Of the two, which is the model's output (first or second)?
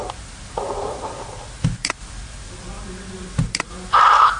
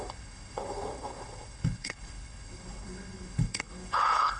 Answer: second